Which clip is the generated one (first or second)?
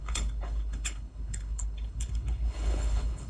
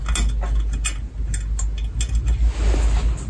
first